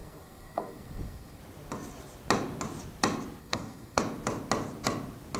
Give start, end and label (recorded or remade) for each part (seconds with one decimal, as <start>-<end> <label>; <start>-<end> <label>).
0.0-1.4 remade; 1.4-3.4 recorded; 3.4-4.0 remade; 4.0-5.4 recorded